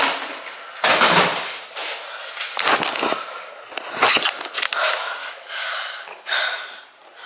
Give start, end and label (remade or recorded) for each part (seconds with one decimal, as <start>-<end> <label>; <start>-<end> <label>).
0.0-5.2 recorded; 5.2-6.0 remade; 6.0-7.3 recorded